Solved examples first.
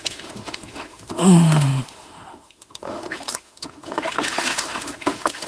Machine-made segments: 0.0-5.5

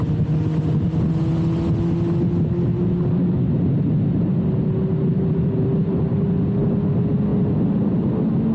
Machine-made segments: 5.0-6.1; 7.3-7.9

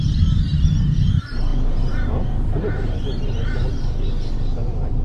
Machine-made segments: 0.0-0.5; 1.0-5.0

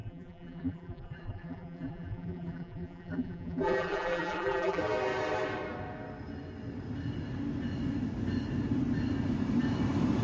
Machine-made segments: 0.0-4.8

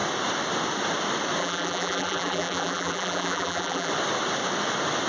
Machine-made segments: 1.4-3.9

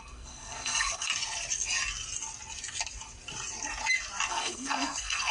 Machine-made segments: 0.0-1.1; 4.3-5.3

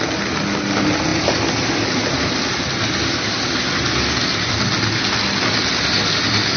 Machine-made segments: none

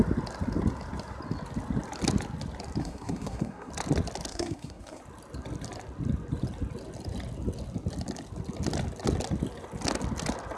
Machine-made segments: 2.8-3.7; 4.3-5.0